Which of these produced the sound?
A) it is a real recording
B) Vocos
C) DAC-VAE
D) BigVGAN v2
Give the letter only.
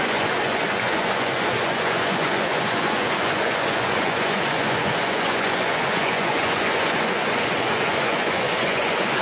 B